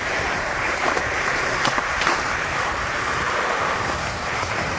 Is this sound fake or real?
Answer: fake